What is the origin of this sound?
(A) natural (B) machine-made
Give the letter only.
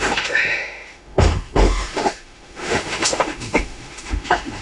B